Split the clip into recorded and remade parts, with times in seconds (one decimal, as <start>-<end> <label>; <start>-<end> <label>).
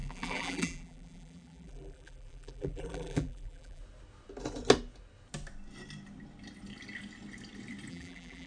0.0-3.8 remade; 3.8-7.9 recorded; 7.9-8.5 remade